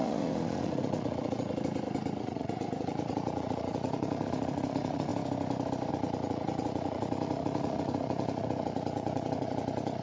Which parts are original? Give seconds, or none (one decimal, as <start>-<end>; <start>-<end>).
1.5-2.2; 5.1-5.9